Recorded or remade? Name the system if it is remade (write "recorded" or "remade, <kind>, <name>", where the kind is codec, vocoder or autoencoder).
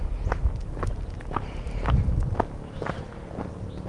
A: recorded